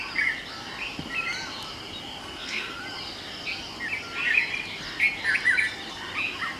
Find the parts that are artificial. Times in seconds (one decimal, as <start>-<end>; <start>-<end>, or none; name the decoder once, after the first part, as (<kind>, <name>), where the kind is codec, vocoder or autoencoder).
2.2-2.8 (codec, SNAC)